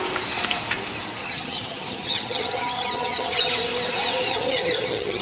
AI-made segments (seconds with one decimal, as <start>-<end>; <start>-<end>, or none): 1.2-3.5; 4.3-5.2

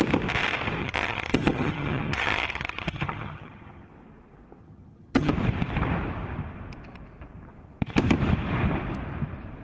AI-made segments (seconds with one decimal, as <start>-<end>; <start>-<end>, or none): 0.8-3.9; 4.6-5.3

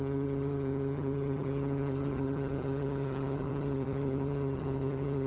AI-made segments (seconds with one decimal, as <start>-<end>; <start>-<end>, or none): 0.0-5.3

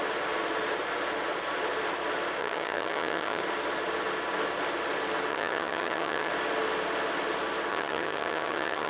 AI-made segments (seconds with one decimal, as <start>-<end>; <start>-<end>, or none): 2.4-3.4; 5.3-6.3; 7.7-8.9

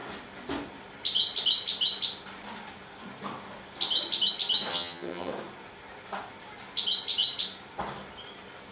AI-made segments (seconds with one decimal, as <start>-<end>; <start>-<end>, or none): 4.7-5.3

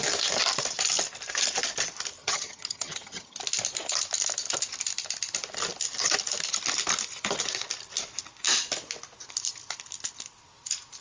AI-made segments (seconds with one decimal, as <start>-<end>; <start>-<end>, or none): 2.2-3.4

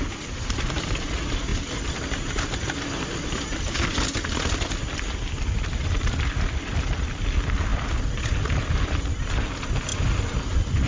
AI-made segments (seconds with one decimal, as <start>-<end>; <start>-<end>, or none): none

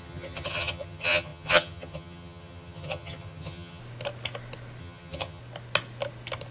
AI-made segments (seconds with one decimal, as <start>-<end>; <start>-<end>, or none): 0.0-3.8; 4.8-5.4